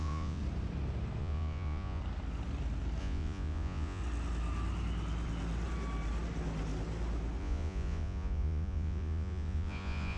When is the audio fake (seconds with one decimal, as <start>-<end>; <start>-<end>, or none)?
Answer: 0.0-0.4; 1.2-2.0; 3.0-4.0; 7.4-10.2